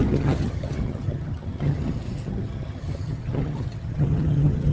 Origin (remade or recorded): remade